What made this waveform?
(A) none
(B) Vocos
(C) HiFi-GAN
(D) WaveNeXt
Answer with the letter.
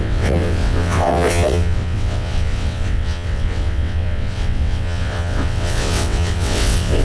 D